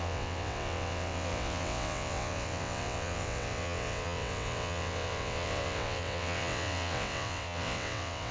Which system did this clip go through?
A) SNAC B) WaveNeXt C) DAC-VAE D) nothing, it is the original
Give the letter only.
B